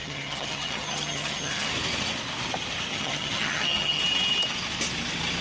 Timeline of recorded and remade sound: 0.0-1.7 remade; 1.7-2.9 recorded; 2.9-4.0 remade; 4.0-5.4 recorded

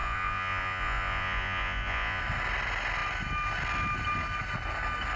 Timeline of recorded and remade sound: 0.0-2.2 remade; 2.2-5.2 recorded